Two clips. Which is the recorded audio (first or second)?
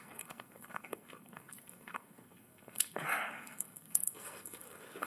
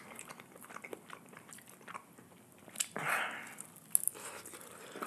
second